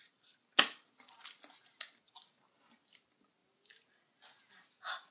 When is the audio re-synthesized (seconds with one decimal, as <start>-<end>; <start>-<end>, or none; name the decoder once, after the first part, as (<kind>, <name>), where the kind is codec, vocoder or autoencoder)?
none

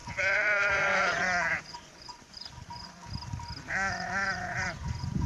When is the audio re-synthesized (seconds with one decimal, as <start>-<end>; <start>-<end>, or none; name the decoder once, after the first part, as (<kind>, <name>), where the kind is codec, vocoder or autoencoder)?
0.0-3.0 (vocoder, Vocos); 3.7-5.3

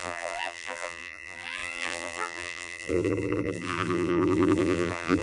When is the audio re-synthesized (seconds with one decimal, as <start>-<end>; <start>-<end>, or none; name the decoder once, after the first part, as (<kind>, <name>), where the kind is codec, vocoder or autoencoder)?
0.0-5.2 (vocoder, BigVGAN v2)

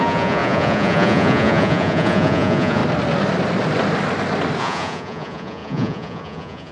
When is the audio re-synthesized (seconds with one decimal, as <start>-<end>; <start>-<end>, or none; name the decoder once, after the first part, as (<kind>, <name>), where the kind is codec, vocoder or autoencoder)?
0.0-2.8 (vocoder, Vocos); 4.6-6.7